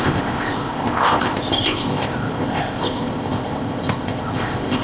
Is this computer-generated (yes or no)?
yes